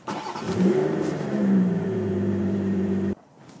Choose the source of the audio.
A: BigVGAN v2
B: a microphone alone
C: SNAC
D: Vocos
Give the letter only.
A